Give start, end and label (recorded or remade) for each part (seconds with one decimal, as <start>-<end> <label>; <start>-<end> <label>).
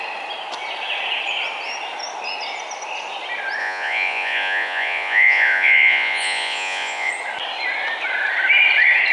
0.0-3.6 recorded; 3.6-7.1 remade; 7.1-9.1 recorded